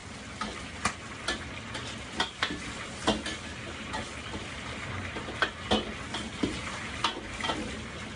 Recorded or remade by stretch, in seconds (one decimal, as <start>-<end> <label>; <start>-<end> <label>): 0.0-8.2 recorded